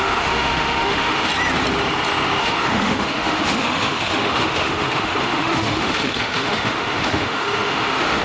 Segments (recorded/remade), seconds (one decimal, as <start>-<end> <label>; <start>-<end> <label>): 0.0-1.3 remade; 1.3-2.4 recorded; 2.4-8.2 remade